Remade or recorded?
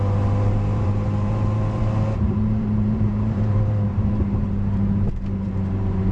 remade